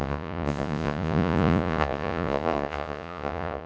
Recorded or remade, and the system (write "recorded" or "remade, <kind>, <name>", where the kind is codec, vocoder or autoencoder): remade, vocoder, Vocos